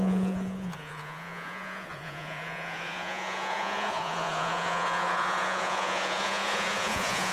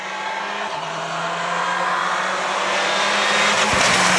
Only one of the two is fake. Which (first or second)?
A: first